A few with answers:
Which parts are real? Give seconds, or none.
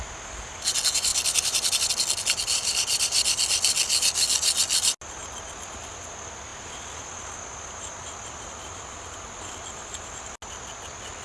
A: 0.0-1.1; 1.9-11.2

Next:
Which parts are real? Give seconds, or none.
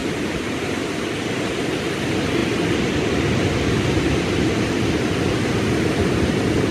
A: 0.7-6.7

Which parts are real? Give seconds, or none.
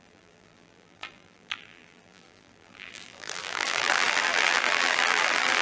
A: none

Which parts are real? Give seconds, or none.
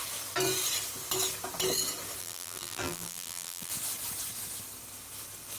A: 0.0-2.2; 3.7-5.6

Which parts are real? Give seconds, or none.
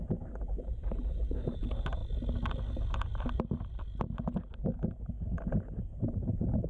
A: 2.0-2.7; 3.1-5.8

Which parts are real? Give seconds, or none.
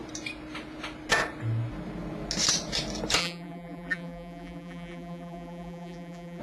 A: 0.0-3.2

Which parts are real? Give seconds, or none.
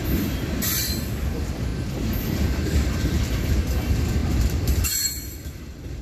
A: 1.7-2.2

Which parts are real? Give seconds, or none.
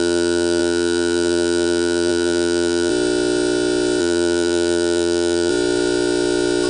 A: 2.9-4.0; 5.5-6.7